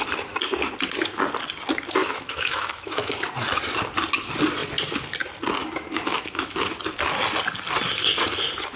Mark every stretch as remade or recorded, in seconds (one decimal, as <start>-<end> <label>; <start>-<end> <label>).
0.0-2.0 recorded; 2.0-3.1 remade; 3.1-5.6 recorded; 5.6-6.8 remade; 6.8-8.8 recorded